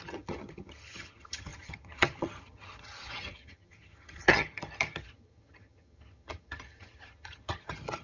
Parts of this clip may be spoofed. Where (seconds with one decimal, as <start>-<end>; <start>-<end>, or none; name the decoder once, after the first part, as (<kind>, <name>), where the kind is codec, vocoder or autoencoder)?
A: 0.0-8.0 (vocoder, HiFi-GAN)